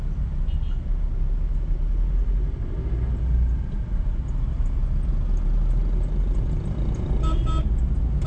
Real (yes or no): yes